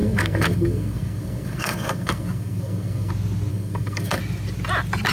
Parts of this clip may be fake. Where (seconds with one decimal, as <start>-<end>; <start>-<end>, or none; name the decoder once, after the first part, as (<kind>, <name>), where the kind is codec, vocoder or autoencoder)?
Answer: 0.0-3.1 (codec, SNAC); 3.5-4.2